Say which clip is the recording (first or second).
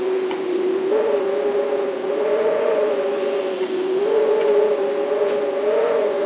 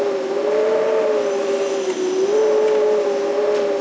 second